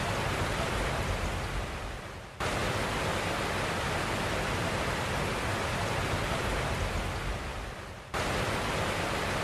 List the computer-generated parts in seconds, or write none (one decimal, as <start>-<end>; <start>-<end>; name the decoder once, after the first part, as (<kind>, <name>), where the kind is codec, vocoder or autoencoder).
none